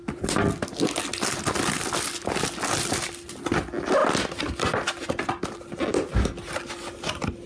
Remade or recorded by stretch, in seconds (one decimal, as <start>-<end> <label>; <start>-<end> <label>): 0.0-7.5 recorded